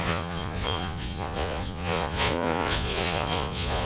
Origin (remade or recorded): remade